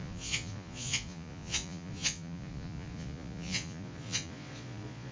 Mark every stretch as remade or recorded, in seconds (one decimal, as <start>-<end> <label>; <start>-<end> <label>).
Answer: 0.0-5.1 remade